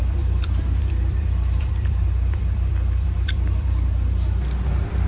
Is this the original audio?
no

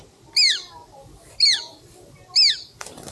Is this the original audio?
yes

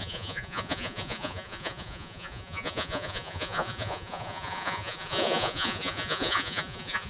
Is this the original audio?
no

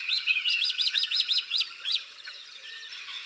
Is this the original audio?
no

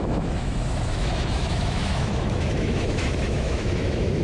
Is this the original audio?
no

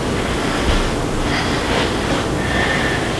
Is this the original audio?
yes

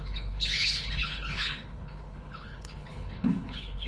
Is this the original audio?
no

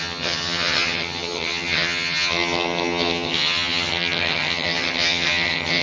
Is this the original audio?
no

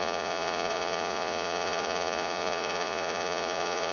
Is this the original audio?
no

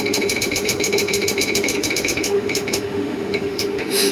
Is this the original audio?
no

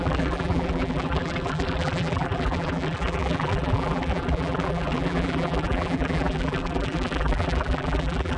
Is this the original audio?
no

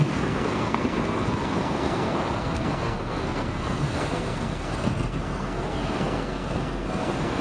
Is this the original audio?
no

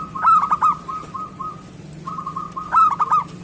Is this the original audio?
yes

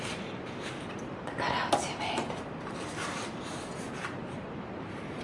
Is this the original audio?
no